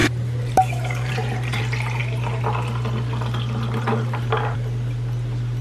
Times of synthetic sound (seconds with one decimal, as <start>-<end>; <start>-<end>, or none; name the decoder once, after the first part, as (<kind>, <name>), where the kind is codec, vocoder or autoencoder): 0.0-1.6 (vocoder, BigVGAN v2)